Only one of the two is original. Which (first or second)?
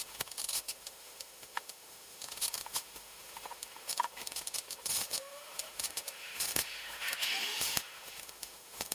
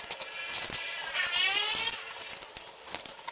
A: second